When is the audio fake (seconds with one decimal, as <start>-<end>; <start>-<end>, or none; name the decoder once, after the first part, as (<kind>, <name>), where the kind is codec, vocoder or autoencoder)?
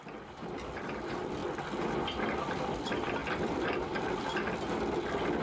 3.2-4.5 (vocoder, BigVGAN v2)